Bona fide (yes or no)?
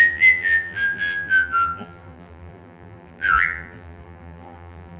no